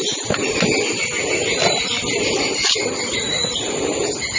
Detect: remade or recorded recorded